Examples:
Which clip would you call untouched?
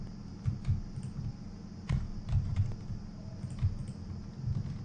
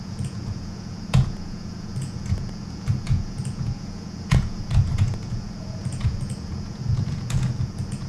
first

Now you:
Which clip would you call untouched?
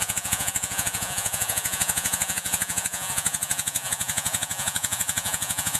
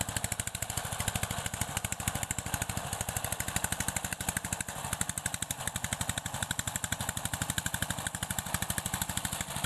second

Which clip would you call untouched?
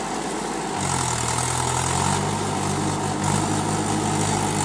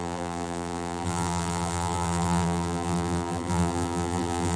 first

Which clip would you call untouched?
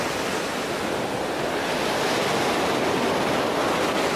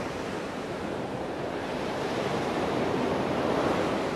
first